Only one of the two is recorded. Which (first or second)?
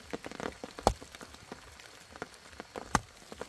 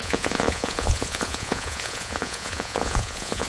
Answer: first